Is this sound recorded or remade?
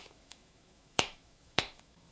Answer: remade